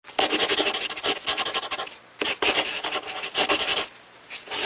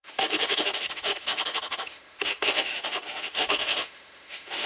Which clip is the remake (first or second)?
second